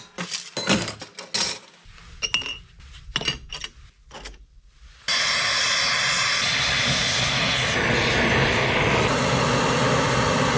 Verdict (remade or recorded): recorded